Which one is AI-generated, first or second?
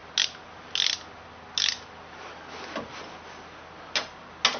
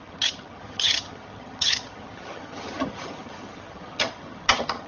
second